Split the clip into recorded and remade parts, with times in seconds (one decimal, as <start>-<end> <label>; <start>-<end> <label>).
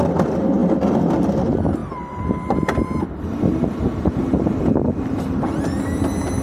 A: 0.0-1.8 recorded; 1.8-5.6 remade; 5.6-6.4 recorded